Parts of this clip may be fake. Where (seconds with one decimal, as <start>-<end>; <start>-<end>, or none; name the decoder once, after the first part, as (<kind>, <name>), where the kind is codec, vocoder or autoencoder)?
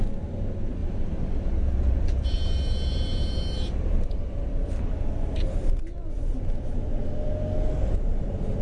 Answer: 0.0-0.8 (vocoder, BigVGAN v2); 1.5-7.0; 7.9-8.6